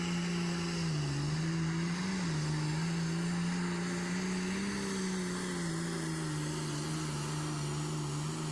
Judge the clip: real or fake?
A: real